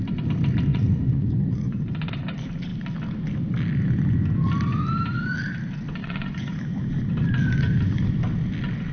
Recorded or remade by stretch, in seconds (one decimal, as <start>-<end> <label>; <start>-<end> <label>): 0.0-0.7 recorded; 0.7-1.8 remade; 1.8-6.0 recorded; 6.0-6.6 remade; 6.6-8.9 recorded